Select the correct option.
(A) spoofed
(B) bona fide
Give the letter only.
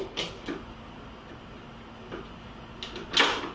B